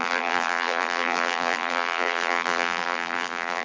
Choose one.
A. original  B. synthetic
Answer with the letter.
B